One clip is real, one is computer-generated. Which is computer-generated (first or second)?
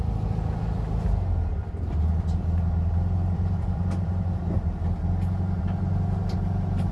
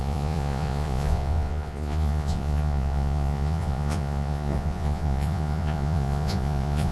second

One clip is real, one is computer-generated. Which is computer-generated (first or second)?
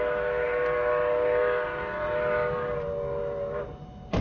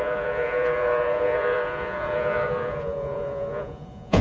second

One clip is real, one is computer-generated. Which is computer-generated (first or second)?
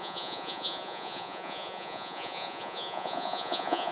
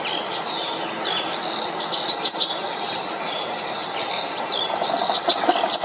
first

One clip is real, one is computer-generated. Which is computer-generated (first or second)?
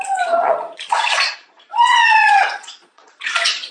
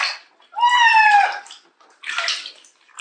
first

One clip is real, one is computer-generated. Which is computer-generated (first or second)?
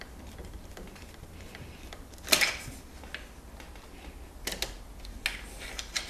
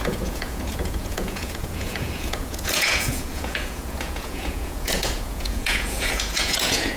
second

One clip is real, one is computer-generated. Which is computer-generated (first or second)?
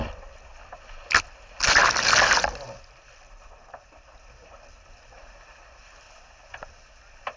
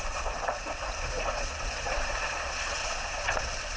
second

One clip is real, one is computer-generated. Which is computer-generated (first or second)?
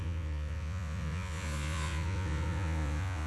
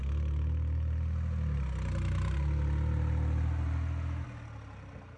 first